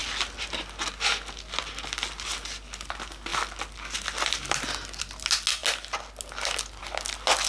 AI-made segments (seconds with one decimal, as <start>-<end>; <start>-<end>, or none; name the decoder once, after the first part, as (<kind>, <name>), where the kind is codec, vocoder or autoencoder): none